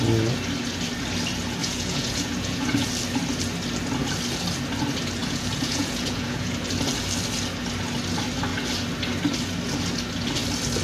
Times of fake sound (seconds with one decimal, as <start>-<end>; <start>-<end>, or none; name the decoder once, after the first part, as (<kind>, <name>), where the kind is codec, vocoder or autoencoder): 1.6-2.9 (vocoder, Vocos); 5.2-6.5